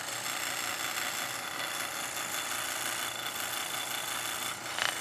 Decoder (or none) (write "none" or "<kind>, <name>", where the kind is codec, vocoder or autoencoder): none